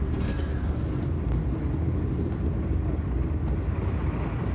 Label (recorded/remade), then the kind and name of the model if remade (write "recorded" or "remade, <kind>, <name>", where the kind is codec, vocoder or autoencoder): recorded